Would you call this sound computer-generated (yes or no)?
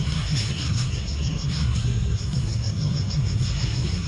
yes